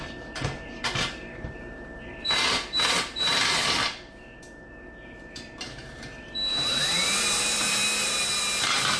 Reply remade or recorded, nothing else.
remade